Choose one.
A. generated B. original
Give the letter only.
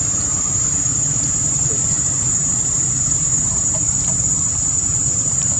A